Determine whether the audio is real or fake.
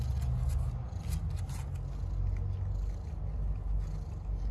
real